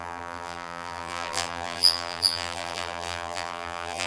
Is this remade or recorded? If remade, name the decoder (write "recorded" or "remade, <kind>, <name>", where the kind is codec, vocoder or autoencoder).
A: remade, vocoder, BigVGAN v2